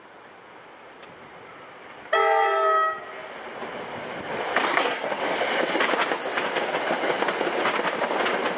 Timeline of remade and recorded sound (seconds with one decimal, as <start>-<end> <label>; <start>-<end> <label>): 0.0-4.7 recorded; 4.7-5.2 remade; 5.2-8.6 recorded